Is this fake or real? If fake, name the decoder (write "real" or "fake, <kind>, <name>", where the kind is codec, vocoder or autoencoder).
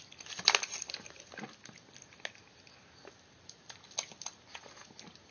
real